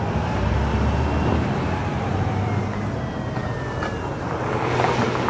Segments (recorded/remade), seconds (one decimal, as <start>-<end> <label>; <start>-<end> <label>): 0.0-1.8 recorded; 1.8-2.6 remade; 2.6-5.3 recorded